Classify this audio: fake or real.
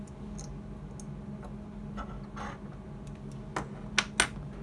real